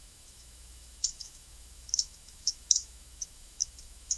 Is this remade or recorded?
remade